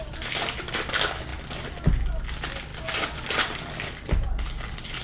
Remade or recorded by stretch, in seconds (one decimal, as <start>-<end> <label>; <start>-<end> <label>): 0.0-5.0 recorded